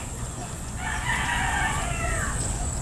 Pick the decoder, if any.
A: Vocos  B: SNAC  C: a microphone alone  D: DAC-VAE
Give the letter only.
A